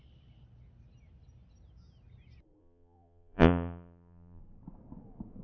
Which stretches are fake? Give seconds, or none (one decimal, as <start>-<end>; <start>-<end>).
2.6-4.4